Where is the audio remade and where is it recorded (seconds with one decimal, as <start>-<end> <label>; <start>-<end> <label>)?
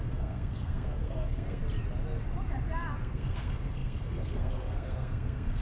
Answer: 0.0-1.6 remade; 1.6-3.0 recorded; 3.0-5.6 remade